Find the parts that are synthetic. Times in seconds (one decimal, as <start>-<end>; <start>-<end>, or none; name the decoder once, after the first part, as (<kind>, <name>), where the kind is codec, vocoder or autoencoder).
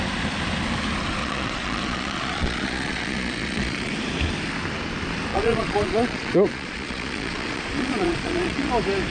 1.2-3.9 (vocoder, Vocos); 5.3-8.7